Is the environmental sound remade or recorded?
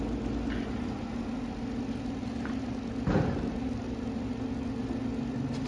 recorded